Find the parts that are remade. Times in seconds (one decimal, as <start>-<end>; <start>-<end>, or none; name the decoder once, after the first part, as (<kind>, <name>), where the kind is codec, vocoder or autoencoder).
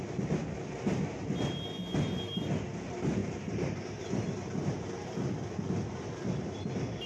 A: 3.2-4.0 (vocoder, BigVGAN v2)